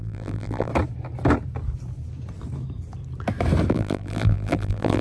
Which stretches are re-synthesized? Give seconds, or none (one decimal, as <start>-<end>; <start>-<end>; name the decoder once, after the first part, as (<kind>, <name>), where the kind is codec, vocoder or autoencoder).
0.0-0.7 (vocoder, BigVGAN v2); 3.7-5.0